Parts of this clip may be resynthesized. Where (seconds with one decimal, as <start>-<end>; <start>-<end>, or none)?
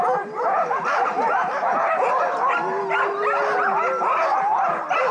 none